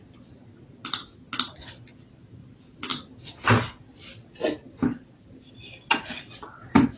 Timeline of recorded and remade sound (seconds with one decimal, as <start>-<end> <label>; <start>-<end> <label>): 0.0-7.0 recorded